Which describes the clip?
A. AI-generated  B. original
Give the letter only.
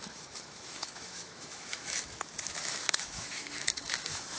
A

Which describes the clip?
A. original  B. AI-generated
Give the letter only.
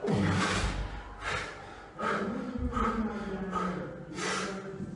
A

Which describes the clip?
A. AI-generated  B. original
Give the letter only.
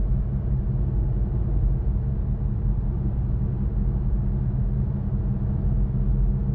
B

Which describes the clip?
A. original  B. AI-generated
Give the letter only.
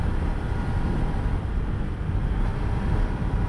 A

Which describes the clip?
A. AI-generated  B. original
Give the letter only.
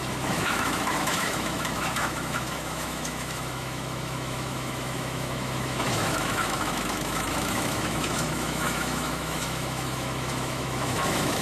A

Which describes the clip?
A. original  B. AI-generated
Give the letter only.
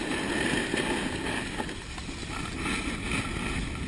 A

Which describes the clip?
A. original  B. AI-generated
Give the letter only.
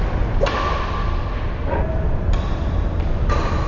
A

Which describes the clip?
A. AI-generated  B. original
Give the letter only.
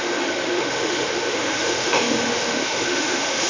A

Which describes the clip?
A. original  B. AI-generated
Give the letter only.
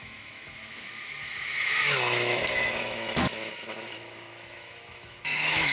B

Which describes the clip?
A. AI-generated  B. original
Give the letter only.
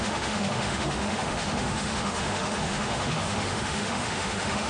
A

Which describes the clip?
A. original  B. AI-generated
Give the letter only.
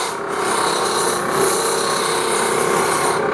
A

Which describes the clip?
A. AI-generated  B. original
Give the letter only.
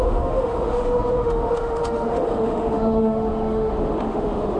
A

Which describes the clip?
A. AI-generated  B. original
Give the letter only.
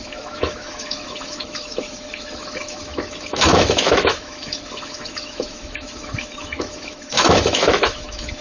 A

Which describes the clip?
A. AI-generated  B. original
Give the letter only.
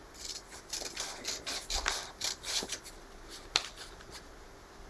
B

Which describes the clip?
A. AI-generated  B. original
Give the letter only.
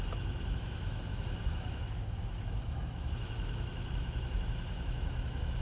A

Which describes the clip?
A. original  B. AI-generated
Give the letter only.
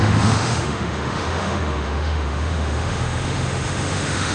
B